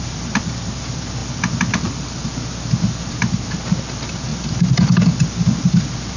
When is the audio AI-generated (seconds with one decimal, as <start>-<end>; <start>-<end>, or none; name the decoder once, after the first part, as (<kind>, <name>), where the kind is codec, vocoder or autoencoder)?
0.0-1.2 (vocoder, BigVGAN v2); 3.0-6.2